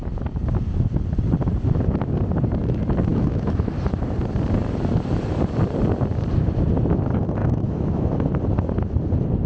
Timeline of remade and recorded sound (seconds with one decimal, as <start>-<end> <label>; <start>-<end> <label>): 0.0-3.1 recorded; 3.1-3.7 remade; 3.7-7.4 recorded; 7.4-8.1 remade; 8.1-9.5 recorded